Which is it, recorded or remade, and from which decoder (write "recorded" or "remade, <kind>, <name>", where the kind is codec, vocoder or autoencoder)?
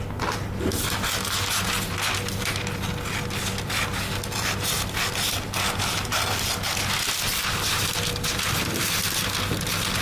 recorded